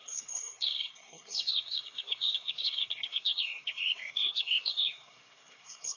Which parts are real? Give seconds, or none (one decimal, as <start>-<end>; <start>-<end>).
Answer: none